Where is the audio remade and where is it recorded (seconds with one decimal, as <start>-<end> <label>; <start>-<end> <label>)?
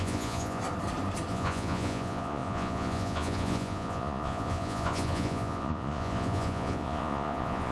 0.0-0.6 remade; 0.6-1.3 recorded; 1.3-7.7 remade